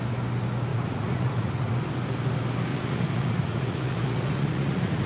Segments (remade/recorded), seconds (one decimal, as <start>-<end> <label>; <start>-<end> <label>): 0.0-0.7 recorded; 0.7-1.7 remade; 1.7-2.7 recorded; 2.7-5.1 remade